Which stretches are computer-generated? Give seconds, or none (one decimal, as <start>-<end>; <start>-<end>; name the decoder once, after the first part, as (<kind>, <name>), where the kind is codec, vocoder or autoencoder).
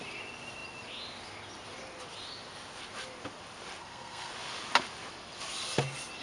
3.8-4.3 (codec, SNAC)